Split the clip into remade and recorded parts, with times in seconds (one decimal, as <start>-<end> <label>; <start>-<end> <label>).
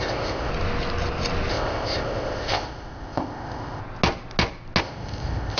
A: 0.0-0.5 remade; 0.5-1.5 recorded; 1.5-3.8 remade; 3.8-4.8 recorded; 4.8-5.6 remade